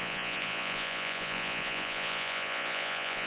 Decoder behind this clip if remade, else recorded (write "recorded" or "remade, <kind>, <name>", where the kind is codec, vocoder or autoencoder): remade, vocoder, Vocos